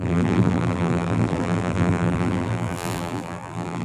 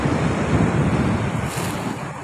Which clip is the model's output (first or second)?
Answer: first